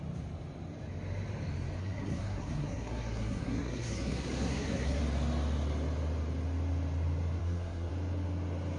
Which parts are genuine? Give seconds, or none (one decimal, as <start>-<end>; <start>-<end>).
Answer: 0.0-1.8; 5.0-7.4; 7.9-8.8